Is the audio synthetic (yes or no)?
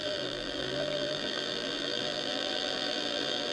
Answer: yes